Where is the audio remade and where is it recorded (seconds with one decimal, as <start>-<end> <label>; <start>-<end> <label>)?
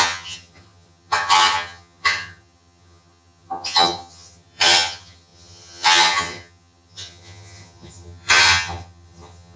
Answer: 0.0-9.6 remade